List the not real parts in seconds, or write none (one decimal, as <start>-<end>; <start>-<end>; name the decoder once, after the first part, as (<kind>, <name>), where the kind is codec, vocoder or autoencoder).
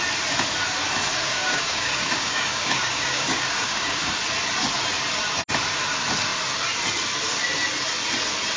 1.2-4.0 (codec, DAC)